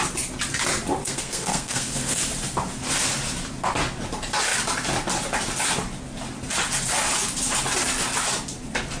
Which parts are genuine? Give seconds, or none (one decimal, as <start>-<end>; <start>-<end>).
0.0-1.0; 2.2-9.0